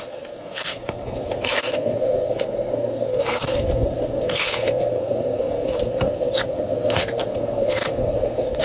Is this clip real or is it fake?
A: fake